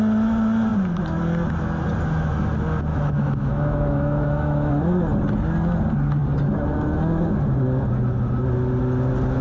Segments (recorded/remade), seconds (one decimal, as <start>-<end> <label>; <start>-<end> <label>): 0.0-2.9 recorded; 2.9-4.7 remade; 4.7-9.4 recorded